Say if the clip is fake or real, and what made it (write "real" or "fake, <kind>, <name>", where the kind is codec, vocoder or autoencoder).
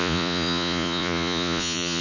fake, vocoder, Vocos